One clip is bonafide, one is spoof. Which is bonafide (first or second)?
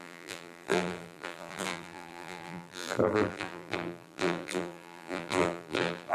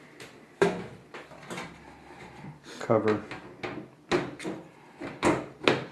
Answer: second